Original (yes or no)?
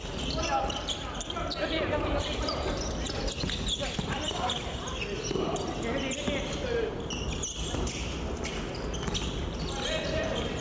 yes